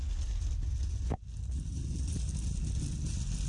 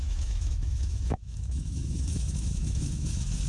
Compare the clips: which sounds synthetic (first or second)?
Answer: second